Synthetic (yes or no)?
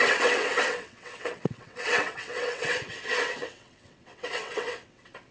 yes